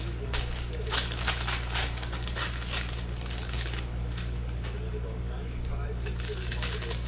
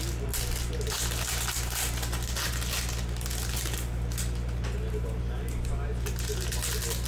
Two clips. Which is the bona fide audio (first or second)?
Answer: second